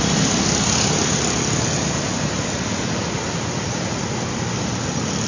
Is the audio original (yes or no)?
yes